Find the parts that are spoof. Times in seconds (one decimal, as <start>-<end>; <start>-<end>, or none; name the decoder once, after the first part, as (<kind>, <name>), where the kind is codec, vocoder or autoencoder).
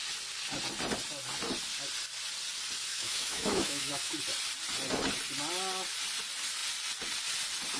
2.9-4.2 (autoencoder, DAC-VAE)